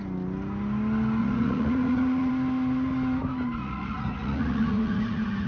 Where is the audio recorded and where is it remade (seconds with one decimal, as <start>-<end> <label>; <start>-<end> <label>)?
0.0-1.2 recorded; 1.2-2.3 remade; 2.3-3.6 recorded; 3.6-5.5 remade